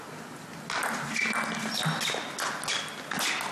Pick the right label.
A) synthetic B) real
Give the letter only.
B